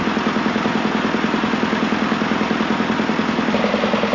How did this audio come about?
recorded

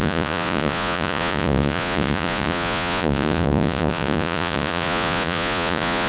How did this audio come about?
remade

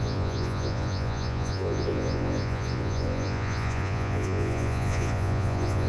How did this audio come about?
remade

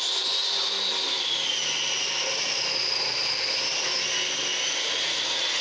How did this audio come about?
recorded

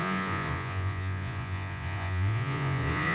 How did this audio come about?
remade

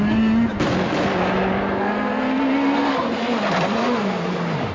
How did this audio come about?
recorded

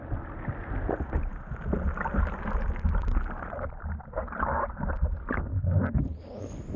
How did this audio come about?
recorded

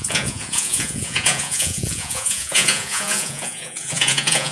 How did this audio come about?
remade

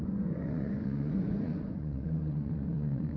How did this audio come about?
remade